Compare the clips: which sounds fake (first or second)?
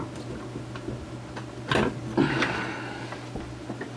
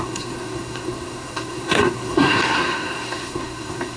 second